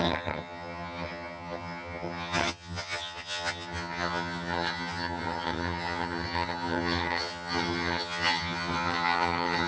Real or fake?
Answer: fake